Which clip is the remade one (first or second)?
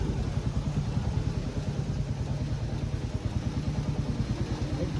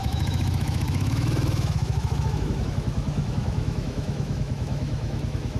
second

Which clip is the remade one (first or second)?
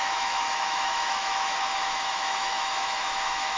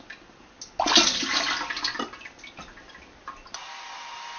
first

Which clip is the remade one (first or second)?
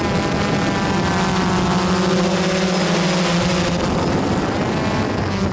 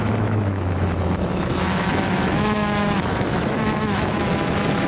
second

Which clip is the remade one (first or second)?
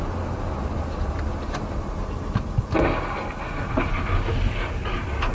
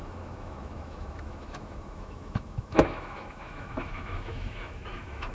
second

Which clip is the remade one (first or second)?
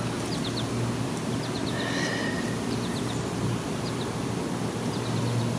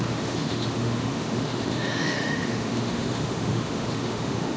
second